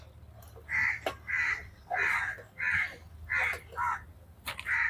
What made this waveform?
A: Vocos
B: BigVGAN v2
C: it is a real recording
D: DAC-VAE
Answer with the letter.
C